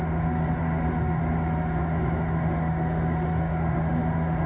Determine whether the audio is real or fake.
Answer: fake